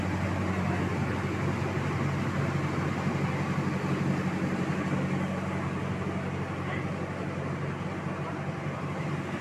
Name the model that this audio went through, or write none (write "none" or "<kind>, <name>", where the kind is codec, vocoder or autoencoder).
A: none